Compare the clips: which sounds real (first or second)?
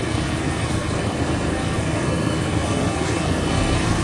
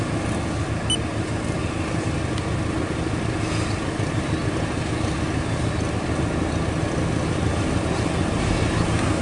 second